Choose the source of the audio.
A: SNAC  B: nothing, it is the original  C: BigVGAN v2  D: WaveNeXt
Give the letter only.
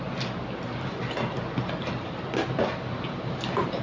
B